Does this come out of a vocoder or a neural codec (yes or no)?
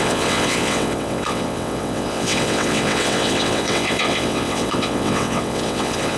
yes